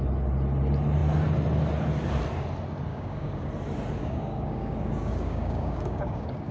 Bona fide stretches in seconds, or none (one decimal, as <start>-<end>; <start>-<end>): 0.0-2.9; 3.5-4.0